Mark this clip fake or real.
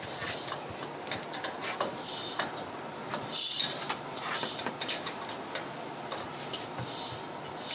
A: real